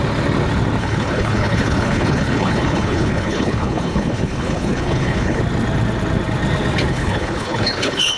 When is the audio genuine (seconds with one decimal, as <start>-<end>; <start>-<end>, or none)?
0.0-0.8; 5.4-6.9